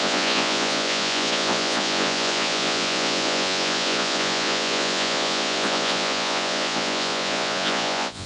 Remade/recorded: remade